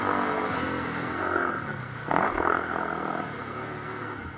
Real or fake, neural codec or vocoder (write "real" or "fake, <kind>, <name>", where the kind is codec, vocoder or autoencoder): fake, codec, SNAC